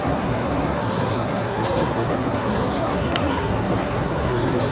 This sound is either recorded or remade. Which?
remade